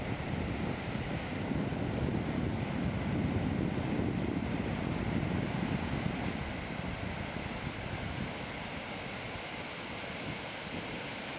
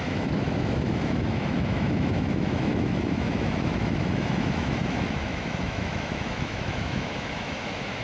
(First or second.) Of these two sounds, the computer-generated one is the second